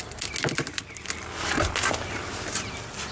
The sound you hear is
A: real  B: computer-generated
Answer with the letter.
A